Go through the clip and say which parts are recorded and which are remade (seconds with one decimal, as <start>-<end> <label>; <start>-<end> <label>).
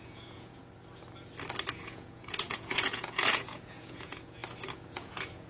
0.0-0.6 remade; 0.6-1.7 recorded; 1.7-4.4 remade; 4.4-4.9 recorded; 4.9-5.5 remade